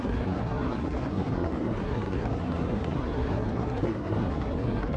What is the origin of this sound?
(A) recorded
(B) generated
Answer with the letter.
B